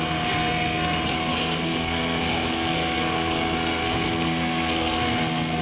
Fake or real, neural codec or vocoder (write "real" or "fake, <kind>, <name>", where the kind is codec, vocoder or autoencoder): fake, codec, SNAC